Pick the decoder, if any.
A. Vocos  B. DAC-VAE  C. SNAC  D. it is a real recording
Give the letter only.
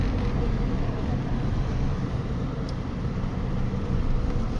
D